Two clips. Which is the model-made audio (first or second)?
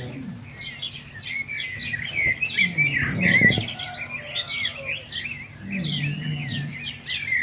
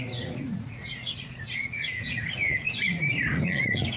second